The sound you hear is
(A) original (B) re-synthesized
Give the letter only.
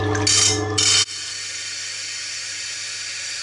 A